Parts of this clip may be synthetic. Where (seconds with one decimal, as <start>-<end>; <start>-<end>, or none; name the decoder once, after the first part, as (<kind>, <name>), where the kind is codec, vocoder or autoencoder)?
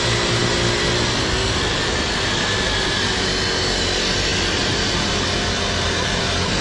none